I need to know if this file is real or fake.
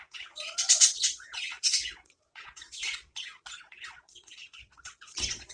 fake